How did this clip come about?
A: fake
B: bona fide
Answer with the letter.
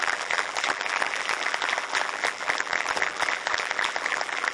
A